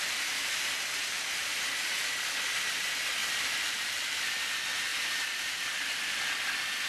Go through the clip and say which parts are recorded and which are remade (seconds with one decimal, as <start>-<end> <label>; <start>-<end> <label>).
0.0-3.2 recorded; 3.2-4.3 remade; 4.3-4.9 recorded; 4.9-5.9 remade; 5.9-6.9 recorded